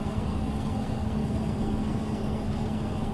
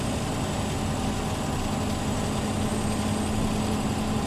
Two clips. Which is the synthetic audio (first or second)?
first